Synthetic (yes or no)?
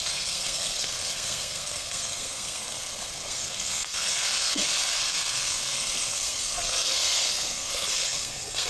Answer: yes